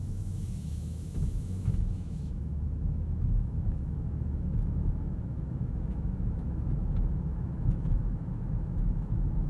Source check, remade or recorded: remade